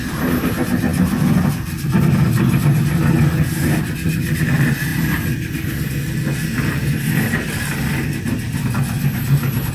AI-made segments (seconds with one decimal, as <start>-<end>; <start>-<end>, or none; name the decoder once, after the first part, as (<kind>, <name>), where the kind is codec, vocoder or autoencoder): none